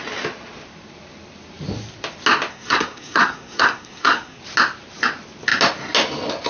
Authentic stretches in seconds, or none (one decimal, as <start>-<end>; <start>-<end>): 0.0-2.5; 4.4-6.5